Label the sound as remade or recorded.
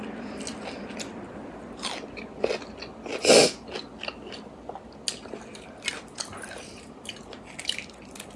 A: recorded